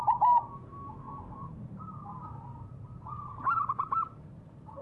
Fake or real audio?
fake